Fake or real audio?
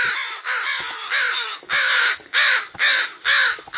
real